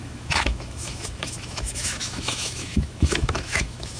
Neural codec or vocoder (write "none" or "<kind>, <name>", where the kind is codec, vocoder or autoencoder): autoencoder, DAC-VAE